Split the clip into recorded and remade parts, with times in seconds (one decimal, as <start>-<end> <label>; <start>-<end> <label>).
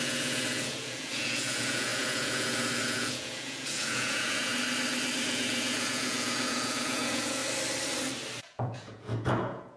0.0-4.5 remade; 4.5-5.2 recorded; 5.2-7.4 remade; 7.4-8.4 recorded; 8.4-9.8 remade